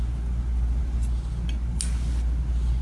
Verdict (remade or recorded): recorded